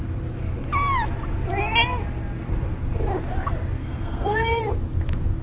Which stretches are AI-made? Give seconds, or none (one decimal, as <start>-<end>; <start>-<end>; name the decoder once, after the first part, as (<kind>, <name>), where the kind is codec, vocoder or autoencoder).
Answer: 3.8-4.6 (codec, SNAC)